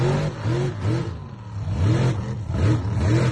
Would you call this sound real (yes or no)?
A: yes